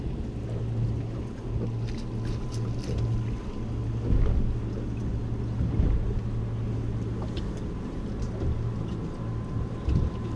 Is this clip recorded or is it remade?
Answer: recorded